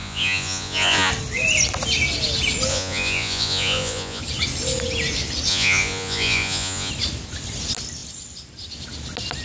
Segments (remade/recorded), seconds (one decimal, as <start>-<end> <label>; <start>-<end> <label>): 0.0-1.1 remade; 1.1-2.7 recorded; 2.7-4.2 remade; 4.2-5.5 recorded; 5.5-6.9 remade; 6.9-9.4 recorded

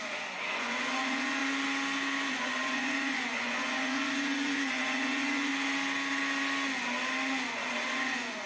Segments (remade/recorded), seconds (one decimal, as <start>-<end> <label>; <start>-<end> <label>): 0.0-1.4 remade; 1.4-2.3 recorded; 2.3-5.5 remade; 5.5-7.4 recorded; 7.4-8.5 remade

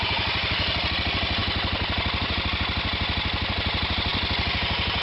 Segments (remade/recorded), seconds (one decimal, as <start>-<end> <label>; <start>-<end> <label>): 0.0-5.0 recorded

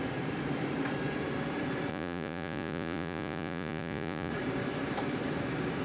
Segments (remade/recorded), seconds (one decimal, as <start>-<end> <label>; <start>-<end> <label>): 0.0-1.9 recorded; 1.9-4.3 remade; 4.3-5.8 recorded

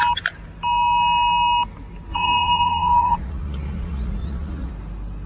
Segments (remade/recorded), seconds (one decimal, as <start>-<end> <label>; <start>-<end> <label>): 0.0-2.1 recorded; 2.1-4.7 remade; 4.7-5.3 recorded

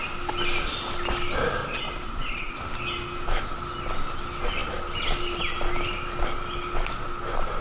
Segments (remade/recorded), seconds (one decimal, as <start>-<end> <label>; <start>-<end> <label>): 0.0-1.6 recorded; 1.6-2.6 remade; 2.6-7.6 recorded

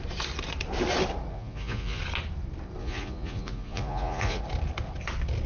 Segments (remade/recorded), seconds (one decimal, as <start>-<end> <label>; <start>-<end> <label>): 0.0-1.3 recorded; 1.3-2.0 remade; 2.0-2.8 recorded; 2.8-4.4 remade; 4.4-5.5 recorded